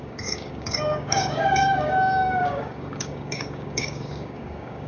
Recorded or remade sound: remade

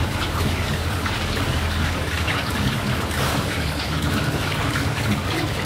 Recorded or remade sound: remade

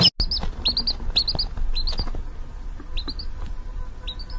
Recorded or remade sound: recorded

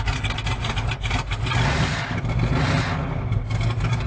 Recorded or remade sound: recorded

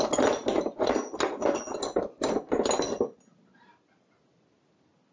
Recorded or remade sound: recorded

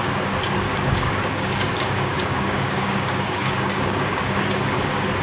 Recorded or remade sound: remade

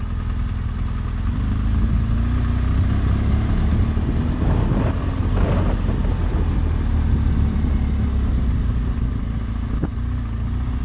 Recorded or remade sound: recorded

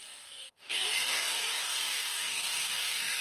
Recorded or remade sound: remade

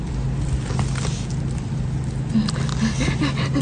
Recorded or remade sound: recorded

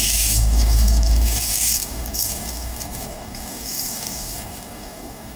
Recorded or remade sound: remade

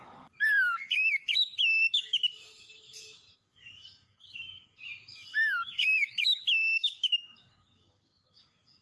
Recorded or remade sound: remade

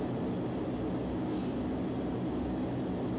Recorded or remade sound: recorded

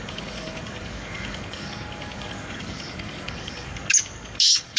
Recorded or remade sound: remade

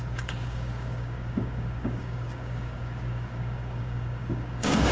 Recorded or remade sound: remade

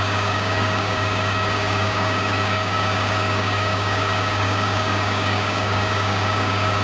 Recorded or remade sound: remade